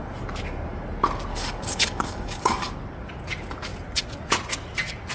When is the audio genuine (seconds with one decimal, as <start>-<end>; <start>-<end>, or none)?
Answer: 0.0-1.3; 2.7-5.1